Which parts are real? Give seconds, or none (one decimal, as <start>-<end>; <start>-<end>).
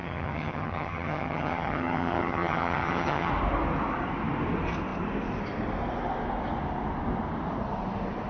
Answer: 3.3-8.3